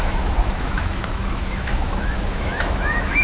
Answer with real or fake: fake